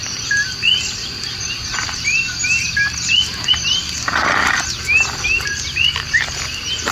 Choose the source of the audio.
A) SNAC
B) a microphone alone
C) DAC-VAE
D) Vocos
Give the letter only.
B